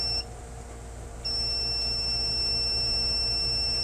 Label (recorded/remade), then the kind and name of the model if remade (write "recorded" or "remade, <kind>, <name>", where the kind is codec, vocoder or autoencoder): recorded